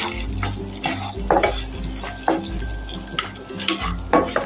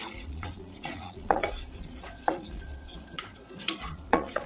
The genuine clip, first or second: first